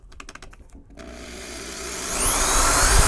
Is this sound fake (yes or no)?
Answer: no